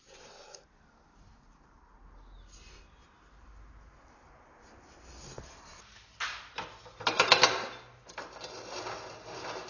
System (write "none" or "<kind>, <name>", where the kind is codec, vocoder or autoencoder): none